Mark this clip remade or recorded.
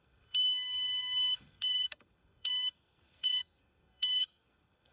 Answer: remade